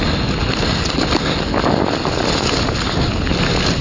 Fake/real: real